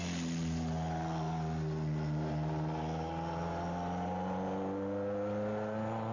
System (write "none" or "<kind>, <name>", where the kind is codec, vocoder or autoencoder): none